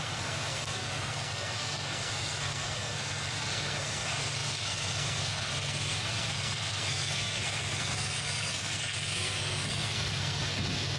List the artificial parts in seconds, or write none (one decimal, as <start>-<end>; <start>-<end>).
0.0-11.0